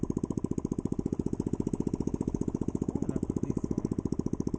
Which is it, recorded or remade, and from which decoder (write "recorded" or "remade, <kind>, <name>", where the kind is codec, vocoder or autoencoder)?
recorded